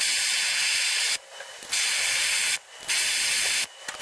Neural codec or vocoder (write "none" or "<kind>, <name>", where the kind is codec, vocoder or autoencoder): none